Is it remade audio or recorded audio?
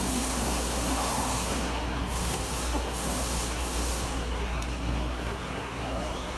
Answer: remade